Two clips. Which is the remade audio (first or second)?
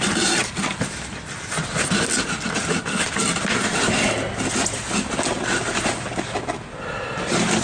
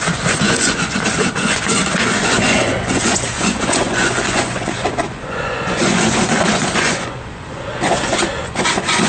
second